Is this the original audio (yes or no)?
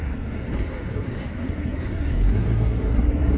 no